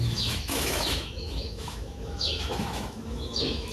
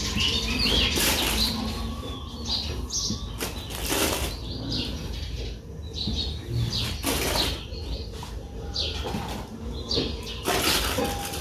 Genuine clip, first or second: second